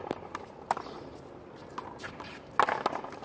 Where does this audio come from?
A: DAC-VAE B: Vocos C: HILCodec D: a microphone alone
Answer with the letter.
D